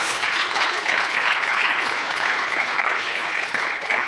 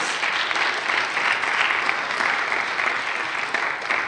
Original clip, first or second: second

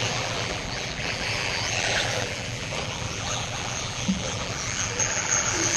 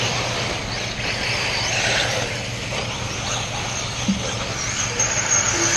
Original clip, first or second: second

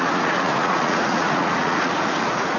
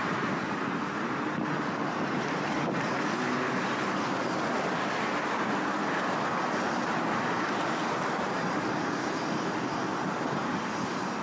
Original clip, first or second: second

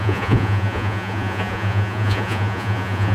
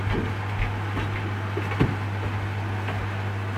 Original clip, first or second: second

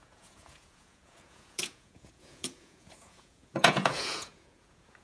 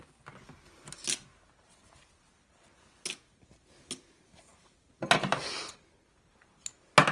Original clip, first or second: second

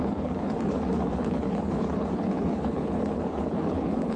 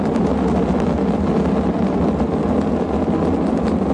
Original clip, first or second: second